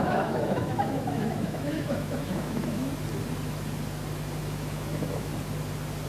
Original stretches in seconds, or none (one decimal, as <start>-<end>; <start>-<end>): 2.9-4.4; 5.3-6.1